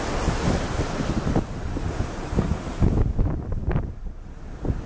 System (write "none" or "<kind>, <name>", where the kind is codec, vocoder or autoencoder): none